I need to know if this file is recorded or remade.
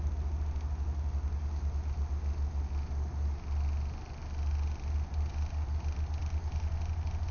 recorded